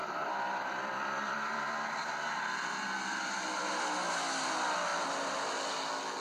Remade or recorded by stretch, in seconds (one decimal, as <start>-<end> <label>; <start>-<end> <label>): 0.0-3.7 remade; 3.7-6.2 recorded